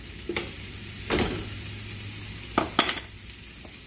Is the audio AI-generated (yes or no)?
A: no